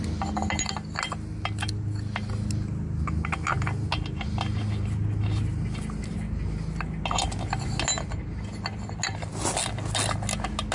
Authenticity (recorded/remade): recorded